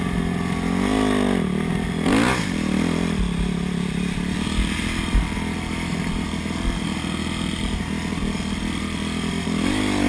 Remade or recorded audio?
recorded